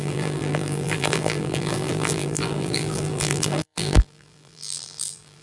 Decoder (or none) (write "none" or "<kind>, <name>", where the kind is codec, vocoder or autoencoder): vocoder, BigVGAN v2